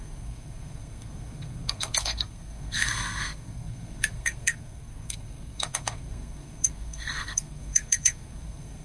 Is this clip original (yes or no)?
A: no